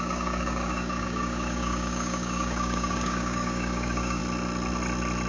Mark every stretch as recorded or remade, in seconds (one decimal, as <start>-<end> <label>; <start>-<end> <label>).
0.0-4.2 remade; 4.2-5.3 recorded